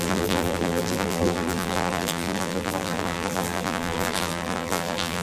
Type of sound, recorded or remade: remade